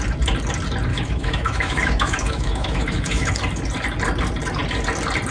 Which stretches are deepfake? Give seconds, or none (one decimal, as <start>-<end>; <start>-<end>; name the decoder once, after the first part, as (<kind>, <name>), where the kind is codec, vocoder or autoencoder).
0.9-3.3 (autoencoder, DAC-VAE)